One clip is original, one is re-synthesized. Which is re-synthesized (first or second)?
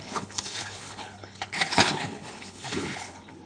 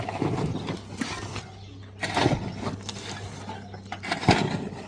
first